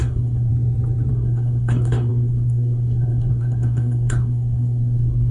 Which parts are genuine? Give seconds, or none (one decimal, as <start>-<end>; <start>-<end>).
0.5-1.1